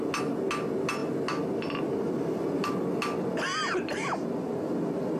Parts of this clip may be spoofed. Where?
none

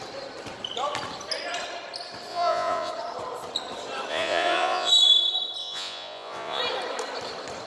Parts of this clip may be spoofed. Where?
2.3-2.9 (vocoder, Vocos); 4.1-4.9; 5.6-6.6

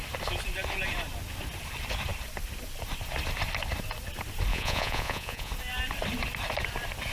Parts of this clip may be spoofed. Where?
4.5-5.5 (vocoder, Vocos)

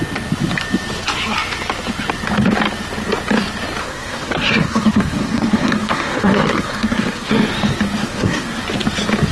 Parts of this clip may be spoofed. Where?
3.8-7.3 (codec, SNAC); 8.0-8.6

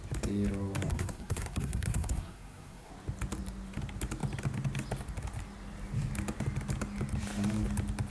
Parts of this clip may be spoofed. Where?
0.9-2.9 (codec, SNAC)

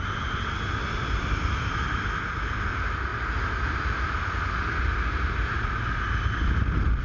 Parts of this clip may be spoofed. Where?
none

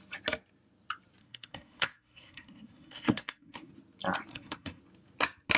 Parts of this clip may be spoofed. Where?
1.2-3.7 (codec, SNAC); 4.3-4.8

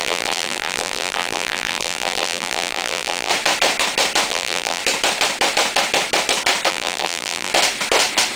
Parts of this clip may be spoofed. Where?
0.0-3.3 (vocoder, BigVGAN v2); 4.3-4.8; 6.7-7.5